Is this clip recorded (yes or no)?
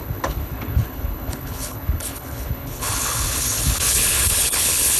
no